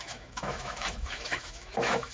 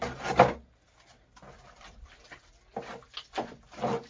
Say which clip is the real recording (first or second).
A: second